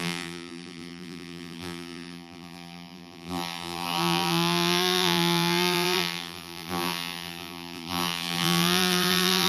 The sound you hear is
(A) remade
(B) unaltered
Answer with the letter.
A